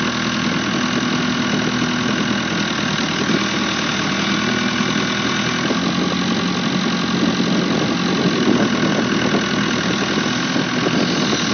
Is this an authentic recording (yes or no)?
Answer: yes